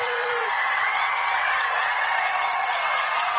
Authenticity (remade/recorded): remade